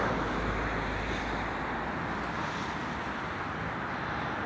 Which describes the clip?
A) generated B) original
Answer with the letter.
B